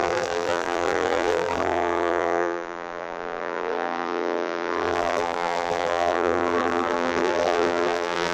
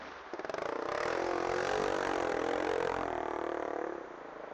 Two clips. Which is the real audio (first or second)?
second